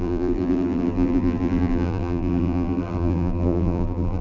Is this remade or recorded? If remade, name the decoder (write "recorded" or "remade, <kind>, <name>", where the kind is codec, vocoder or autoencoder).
remade, vocoder, BigVGAN v2